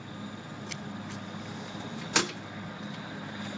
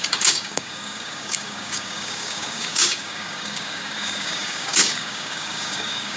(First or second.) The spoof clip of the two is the second